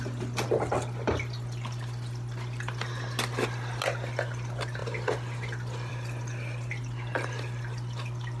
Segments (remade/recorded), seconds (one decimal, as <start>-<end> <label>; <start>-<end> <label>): 0.0-8.4 recorded